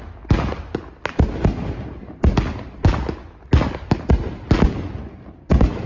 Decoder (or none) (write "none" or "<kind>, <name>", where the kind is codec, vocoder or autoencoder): none